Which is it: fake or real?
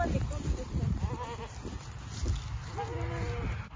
real